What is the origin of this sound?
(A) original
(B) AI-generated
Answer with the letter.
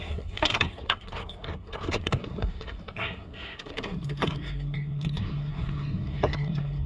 B